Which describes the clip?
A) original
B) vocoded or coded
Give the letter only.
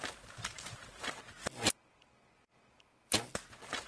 A